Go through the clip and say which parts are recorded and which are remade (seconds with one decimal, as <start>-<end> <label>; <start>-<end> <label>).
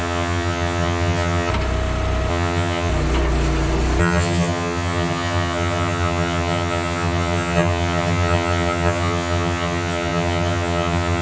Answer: 0.0-1.5 remade; 1.5-2.3 recorded; 2.3-2.9 remade; 2.9-4.0 recorded; 4.0-11.2 remade